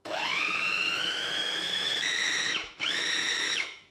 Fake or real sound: fake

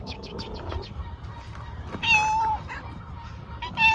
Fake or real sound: real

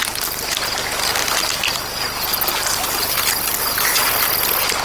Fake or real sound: real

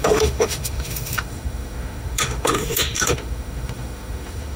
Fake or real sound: fake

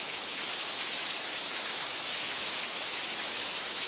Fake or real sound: fake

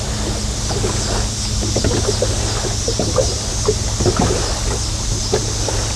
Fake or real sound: real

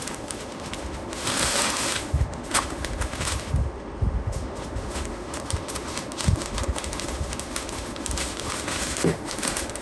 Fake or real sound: fake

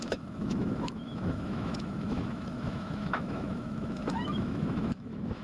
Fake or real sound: fake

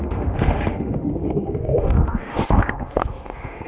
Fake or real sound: fake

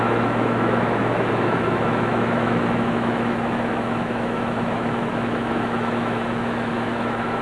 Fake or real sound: fake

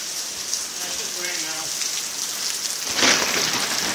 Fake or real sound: real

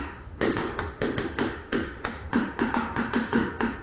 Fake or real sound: fake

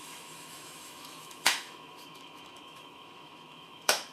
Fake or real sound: fake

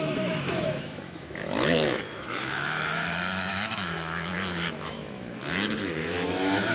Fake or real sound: fake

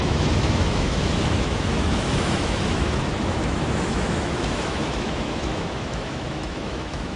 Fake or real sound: fake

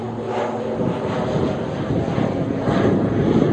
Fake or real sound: real